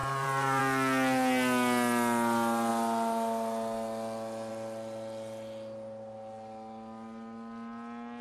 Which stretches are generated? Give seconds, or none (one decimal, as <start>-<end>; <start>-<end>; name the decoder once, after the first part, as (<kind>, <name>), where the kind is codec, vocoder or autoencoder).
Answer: 0.0-0.6 (vocoder, BigVGAN v2)